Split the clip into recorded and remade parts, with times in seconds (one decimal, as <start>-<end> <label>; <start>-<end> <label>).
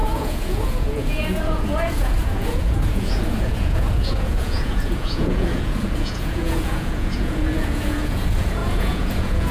0.0-9.5 remade